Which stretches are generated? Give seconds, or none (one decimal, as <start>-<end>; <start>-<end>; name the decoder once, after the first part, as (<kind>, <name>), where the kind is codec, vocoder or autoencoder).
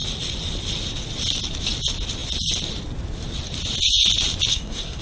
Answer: 4.5-5.0 (codec, SNAC)